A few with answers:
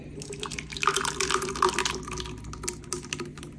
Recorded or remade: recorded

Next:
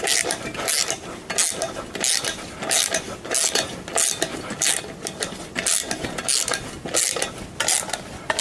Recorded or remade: recorded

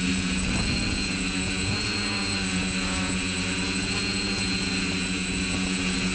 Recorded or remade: remade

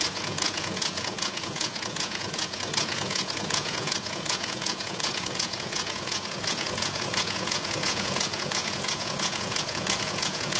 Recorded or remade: remade